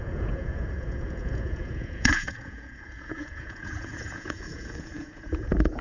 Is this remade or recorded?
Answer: remade